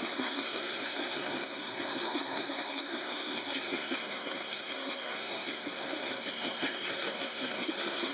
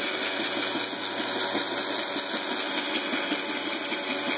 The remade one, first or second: first